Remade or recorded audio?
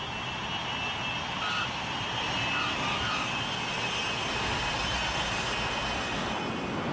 recorded